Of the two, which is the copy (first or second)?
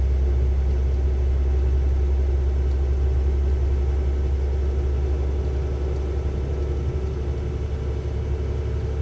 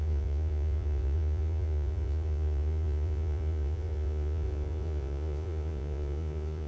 second